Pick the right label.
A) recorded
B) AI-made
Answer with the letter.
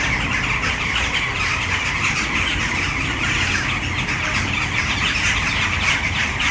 A